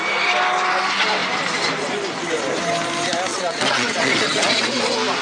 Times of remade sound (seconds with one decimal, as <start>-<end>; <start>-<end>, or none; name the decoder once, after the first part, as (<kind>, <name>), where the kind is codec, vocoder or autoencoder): 3.3-4.8 (vocoder, WaveNeXt)